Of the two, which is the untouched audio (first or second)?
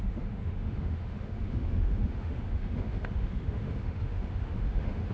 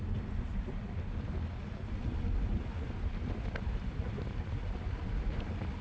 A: second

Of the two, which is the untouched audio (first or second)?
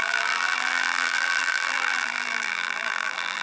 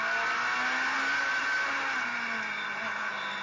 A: second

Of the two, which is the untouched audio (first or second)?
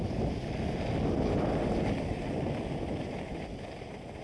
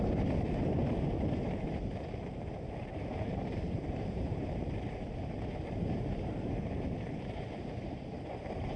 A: first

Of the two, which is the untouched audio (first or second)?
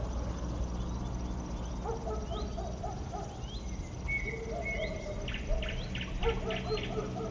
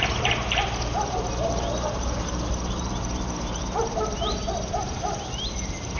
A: first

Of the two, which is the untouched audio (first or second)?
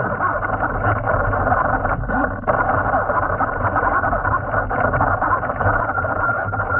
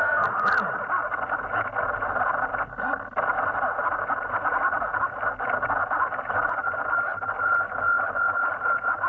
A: second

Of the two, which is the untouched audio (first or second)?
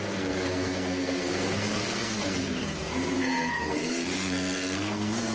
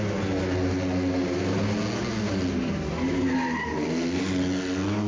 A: second